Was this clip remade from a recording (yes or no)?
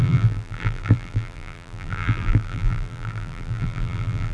yes